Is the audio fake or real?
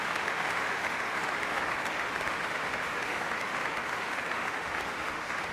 fake